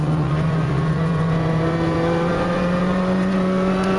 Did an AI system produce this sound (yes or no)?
yes